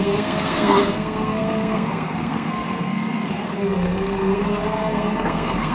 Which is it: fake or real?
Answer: fake